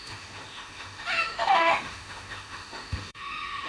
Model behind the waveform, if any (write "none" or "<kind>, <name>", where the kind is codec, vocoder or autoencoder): autoencoder, DAC-VAE